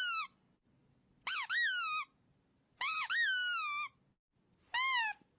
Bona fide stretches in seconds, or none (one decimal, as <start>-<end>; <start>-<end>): 0.0-5.4